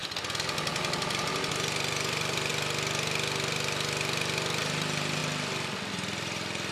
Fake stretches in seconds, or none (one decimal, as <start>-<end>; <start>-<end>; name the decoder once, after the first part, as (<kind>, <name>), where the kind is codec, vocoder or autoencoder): 1.5-2.5 (vocoder, BigVGAN v2); 4.6-5.2; 5.9-6.7